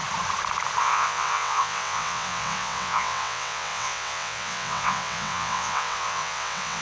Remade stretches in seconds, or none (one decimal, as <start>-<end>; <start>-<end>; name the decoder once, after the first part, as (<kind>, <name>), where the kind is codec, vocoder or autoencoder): 0.8-6.8 (vocoder, WaveNeXt)